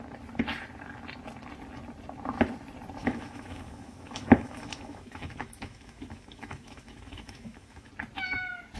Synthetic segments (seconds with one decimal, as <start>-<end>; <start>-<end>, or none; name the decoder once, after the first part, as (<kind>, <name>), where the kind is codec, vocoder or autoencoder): 3.0-7.9 (autoencoder, DAC-VAE)